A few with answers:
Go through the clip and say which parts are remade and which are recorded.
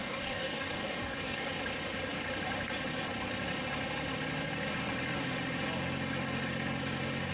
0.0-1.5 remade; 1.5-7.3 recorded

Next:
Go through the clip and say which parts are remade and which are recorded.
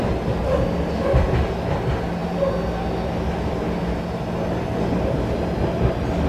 0.0-6.3 recorded